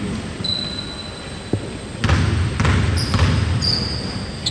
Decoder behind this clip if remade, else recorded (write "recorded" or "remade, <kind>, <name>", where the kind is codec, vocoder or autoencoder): recorded